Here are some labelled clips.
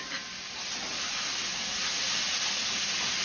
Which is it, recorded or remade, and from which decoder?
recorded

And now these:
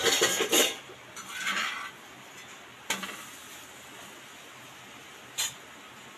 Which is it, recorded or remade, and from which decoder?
recorded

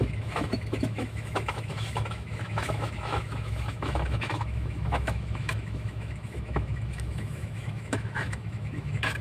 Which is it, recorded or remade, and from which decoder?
remade, autoencoder, DAC-VAE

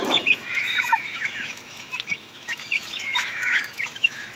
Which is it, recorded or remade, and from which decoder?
remade, autoencoder, DAC-VAE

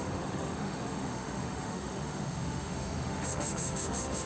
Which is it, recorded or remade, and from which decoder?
remade, autoencoder, DAC-VAE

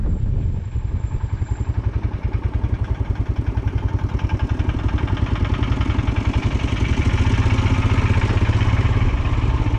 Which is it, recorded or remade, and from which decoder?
recorded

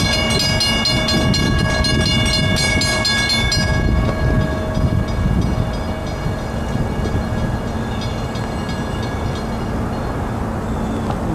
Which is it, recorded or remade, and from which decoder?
recorded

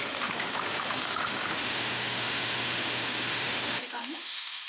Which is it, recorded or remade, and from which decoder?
remade, autoencoder, DAC-VAE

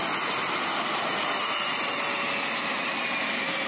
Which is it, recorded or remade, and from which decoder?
recorded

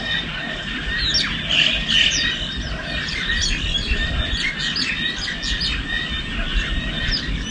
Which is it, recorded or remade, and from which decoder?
recorded